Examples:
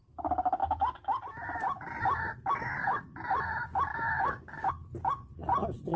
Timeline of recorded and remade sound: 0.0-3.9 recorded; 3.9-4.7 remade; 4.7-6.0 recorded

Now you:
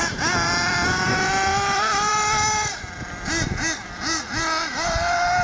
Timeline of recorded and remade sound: 0.0-5.4 recorded

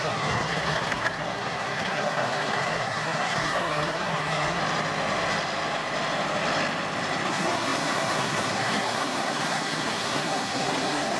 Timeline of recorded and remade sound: 0.0-4.6 remade; 4.6-7.3 recorded; 7.3-11.2 remade

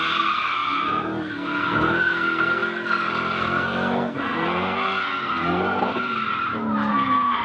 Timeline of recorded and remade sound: 0.0-6.3 remade; 6.3-6.9 recorded; 6.9-7.4 remade

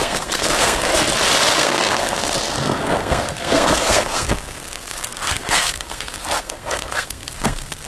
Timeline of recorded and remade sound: 0.0-0.9 remade; 0.9-1.6 recorded; 1.6-7.9 remade

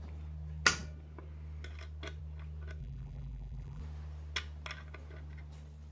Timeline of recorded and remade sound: 0.0-2.8 recorded; 2.8-3.8 remade; 3.8-5.9 recorded